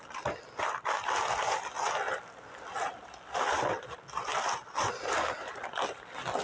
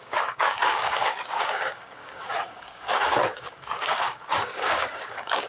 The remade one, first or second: second